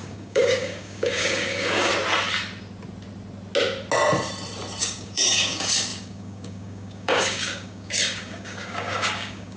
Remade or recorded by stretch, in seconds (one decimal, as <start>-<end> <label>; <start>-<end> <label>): 0.0-1.9 remade; 1.9-4.8 recorded; 4.8-9.6 remade